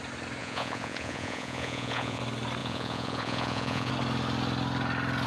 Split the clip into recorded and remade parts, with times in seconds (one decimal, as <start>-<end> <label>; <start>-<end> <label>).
0.0-0.4 recorded; 0.4-2.2 remade; 2.2-2.6 recorded; 2.6-3.9 remade; 3.9-5.3 recorded